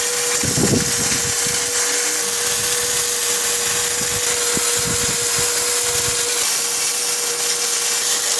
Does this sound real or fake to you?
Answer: real